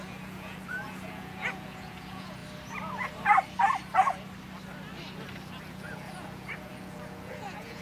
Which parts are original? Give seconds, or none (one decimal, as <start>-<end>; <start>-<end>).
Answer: 2.4-5.7